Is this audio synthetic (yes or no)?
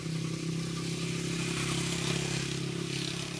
no